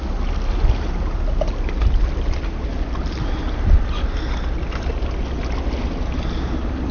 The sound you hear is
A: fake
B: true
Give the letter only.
B